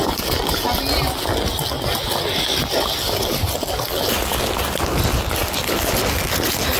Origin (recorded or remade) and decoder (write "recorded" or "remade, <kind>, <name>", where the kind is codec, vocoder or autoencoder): recorded